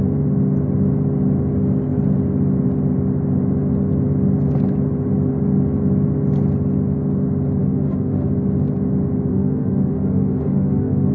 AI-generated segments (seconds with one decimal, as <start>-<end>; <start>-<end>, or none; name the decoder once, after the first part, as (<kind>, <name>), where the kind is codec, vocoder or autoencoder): 7.6-8.3 (autoencoder, DAC-VAE); 9.3-11.1